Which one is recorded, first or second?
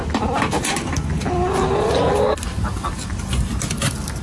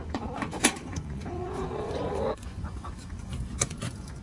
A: first